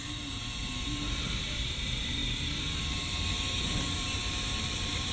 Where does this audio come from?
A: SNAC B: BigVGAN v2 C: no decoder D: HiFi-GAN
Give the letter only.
B